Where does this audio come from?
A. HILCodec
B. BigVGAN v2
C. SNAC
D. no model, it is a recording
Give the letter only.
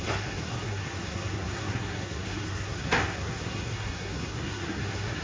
C